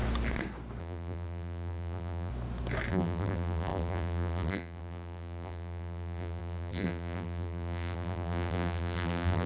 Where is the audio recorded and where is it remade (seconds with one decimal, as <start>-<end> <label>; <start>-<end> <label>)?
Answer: 0.0-0.8 recorded; 0.8-2.3 remade; 2.3-2.9 recorded; 2.9-9.5 remade